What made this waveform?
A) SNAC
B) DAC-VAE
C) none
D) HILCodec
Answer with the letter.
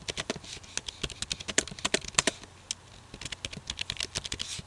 C